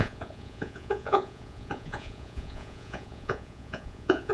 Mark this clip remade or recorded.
remade